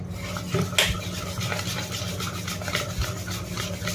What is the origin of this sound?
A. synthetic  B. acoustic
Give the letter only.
B